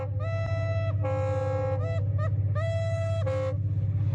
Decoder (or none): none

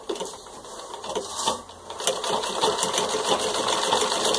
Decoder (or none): none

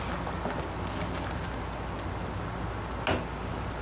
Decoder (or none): none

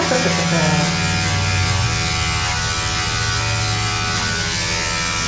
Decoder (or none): none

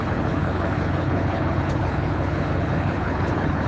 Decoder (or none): codec, HILCodec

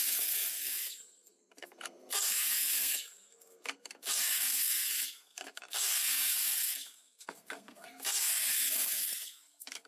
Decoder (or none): codec, SNAC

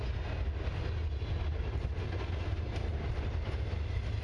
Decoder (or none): none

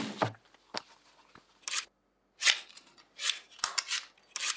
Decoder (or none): none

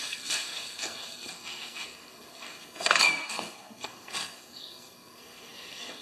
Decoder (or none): codec, SNAC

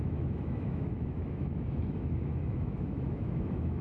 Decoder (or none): autoencoder, DAC-VAE